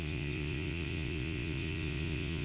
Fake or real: fake